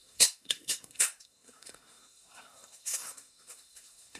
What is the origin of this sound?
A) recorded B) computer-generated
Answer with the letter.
B